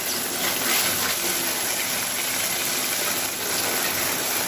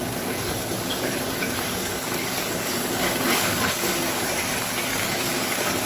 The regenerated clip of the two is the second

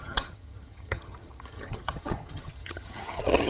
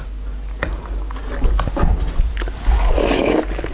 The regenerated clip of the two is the first